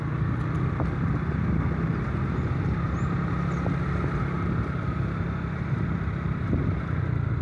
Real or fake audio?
real